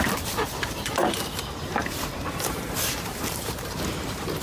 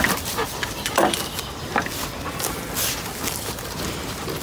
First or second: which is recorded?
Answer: second